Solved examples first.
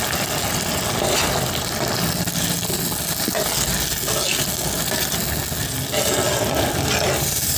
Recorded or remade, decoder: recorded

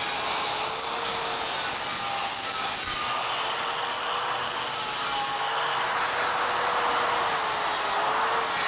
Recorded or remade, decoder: recorded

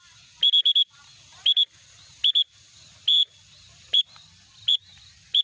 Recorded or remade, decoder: recorded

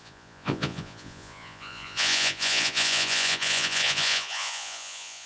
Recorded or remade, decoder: remade, vocoder, Vocos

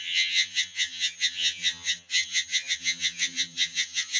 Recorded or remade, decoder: remade, vocoder, HiFi-GAN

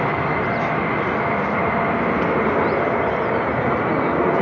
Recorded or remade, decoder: recorded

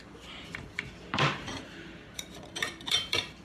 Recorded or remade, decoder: remade, vocoder, BigVGAN v2